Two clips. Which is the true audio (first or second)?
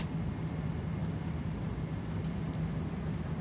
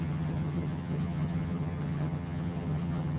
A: first